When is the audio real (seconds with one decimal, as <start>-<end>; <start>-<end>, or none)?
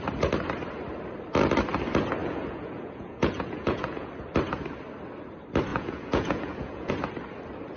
0.0-2.2; 4.1-5.7; 6.9-7.8